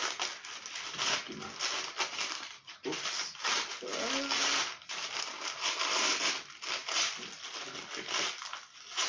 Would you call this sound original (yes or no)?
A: yes